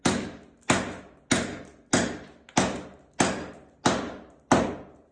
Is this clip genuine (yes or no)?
yes